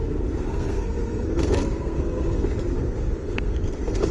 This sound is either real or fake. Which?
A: fake